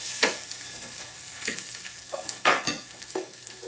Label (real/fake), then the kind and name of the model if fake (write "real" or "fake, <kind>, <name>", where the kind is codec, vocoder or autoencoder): fake, codec, SNAC